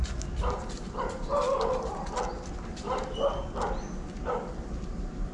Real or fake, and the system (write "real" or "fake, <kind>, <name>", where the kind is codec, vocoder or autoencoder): real